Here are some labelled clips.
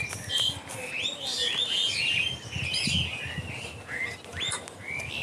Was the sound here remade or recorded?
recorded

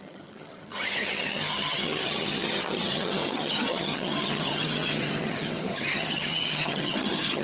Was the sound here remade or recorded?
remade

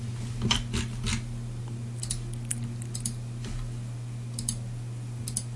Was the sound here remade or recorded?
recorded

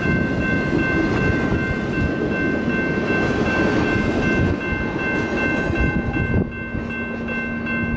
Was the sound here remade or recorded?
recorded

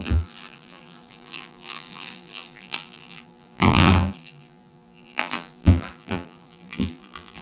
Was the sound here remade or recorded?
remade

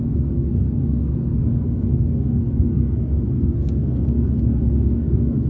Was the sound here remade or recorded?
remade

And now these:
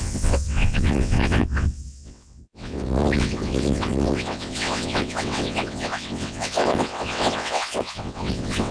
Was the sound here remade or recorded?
remade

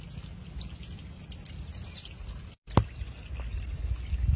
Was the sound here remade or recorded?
recorded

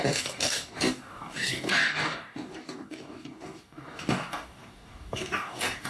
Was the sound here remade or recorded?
remade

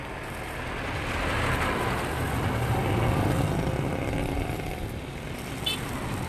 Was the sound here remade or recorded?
recorded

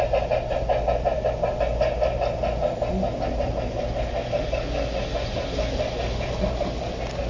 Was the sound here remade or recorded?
recorded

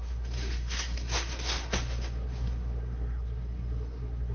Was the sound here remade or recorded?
remade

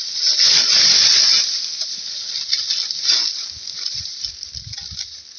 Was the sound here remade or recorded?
recorded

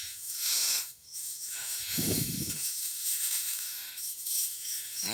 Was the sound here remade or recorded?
remade